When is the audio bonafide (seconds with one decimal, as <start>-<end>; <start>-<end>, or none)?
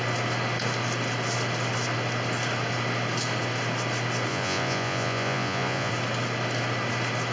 0.0-4.3; 5.9-7.3